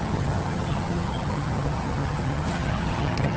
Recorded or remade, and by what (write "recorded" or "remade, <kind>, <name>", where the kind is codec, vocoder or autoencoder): remade, vocoder, HiFi-GAN